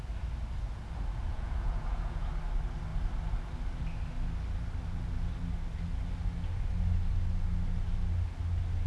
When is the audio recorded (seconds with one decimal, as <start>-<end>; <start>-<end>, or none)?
0.0-1.3; 2.3-8.9